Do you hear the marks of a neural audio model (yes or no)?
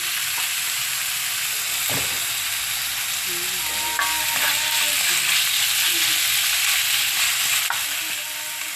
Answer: no